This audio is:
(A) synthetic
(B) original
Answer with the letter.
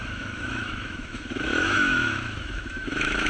A